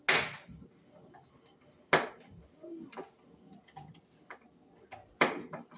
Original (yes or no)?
yes